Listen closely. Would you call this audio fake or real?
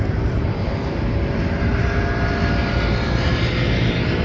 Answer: real